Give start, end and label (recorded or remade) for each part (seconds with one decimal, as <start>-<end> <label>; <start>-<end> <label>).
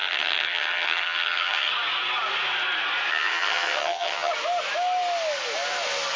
0.0-1.7 remade; 1.7-3.1 recorded; 3.1-4.3 remade; 4.3-6.2 recorded